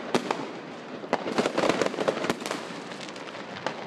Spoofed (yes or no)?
no